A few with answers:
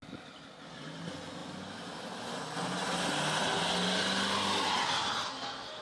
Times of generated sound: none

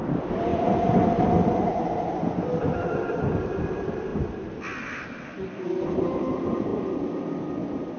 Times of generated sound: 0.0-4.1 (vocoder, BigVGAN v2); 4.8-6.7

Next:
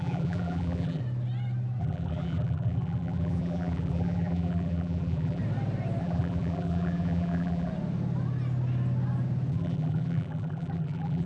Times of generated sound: 0.0-1.0 (vocoder, BigVGAN v2); 1.8-5.4; 6.0-7.7; 9.5-11.3

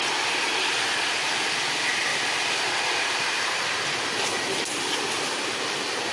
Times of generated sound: none